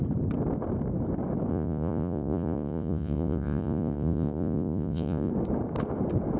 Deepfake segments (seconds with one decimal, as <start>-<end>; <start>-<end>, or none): 1.5-5.3